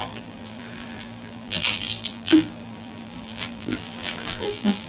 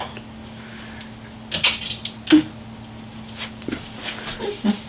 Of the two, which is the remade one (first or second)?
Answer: first